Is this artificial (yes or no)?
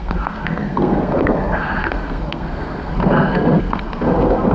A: yes